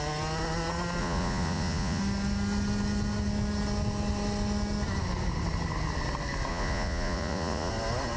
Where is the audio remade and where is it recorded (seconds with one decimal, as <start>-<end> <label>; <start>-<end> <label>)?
0.0-1.0 recorded; 1.0-2.0 remade; 2.0-6.5 recorded; 6.5-7.7 remade; 7.7-8.2 recorded

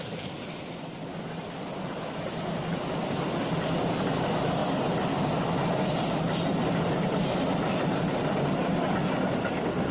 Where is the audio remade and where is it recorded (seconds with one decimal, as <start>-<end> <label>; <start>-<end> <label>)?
0.0-9.9 recorded

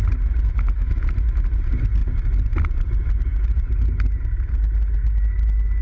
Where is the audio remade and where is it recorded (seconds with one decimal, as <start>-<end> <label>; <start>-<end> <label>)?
0.0-0.5 recorded; 0.5-1.1 remade; 1.1-5.8 recorded